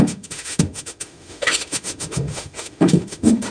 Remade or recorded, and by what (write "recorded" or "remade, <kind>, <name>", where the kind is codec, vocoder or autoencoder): remade, autoencoder, DAC-VAE